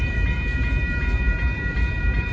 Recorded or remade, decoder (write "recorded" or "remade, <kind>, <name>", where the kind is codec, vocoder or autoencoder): remade, vocoder, BigVGAN v2